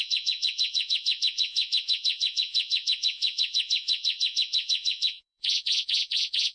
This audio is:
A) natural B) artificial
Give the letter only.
B